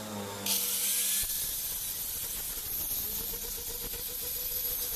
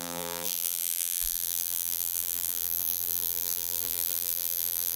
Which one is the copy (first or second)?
second